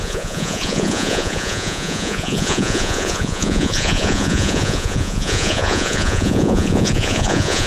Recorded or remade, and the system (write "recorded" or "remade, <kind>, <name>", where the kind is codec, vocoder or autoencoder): remade, vocoder, Vocos